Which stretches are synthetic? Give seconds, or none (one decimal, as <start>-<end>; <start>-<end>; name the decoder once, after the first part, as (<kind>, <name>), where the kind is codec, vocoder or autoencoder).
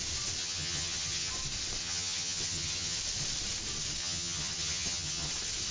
0.4-1.3 (vocoder, HiFi-GAN); 1.8-3.0; 4.0-5.3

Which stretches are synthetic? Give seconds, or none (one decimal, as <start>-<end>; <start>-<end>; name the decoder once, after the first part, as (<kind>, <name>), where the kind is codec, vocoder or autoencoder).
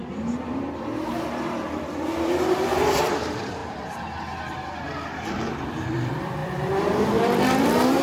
1.1-3.6 (vocoder, BigVGAN v2); 5.3-8.0